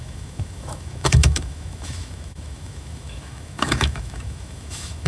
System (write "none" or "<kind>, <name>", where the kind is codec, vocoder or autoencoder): autoencoder, DAC-VAE